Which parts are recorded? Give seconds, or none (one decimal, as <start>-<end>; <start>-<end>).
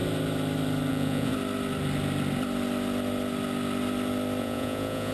0.0-0.9; 1.3-4.4